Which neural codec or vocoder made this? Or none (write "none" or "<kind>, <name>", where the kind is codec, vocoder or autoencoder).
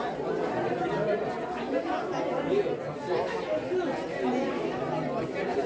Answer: none